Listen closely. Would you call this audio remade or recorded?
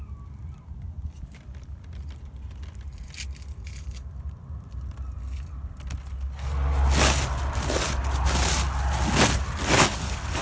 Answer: recorded